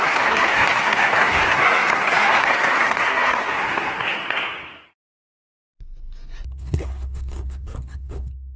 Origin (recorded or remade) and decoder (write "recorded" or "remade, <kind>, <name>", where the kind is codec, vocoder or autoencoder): remade, codec, SNAC